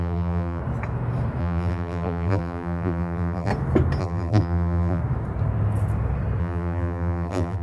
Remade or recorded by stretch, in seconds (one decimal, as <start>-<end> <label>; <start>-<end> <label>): 0.0-0.6 remade; 0.6-1.4 recorded; 1.4-3.5 remade; 3.5-4.0 recorded; 4.0-5.0 remade; 5.0-6.4 recorded; 6.4-7.6 remade